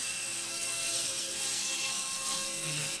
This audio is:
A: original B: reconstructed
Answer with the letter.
B